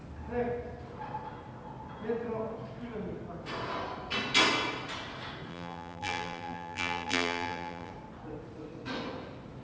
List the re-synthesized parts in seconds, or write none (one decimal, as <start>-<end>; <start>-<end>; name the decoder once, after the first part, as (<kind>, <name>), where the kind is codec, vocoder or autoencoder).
5.5-7.9 (vocoder, BigVGAN v2)